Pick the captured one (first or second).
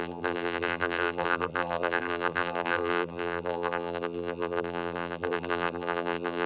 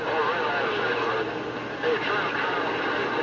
second